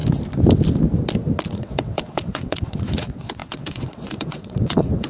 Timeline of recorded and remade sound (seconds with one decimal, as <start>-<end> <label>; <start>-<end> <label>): 0.0-1.5 recorded; 1.5-5.1 remade